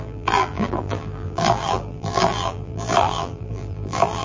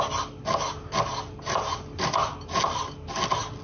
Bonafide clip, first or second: second